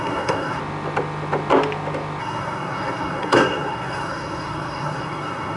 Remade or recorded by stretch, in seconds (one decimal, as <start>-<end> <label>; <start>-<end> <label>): 0.0-0.6 remade; 0.6-2.2 recorded; 2.2-5.6 remade